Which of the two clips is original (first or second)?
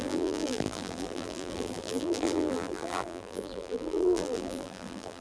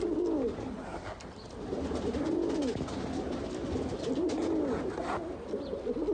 second